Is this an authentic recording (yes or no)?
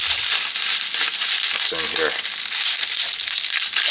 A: yes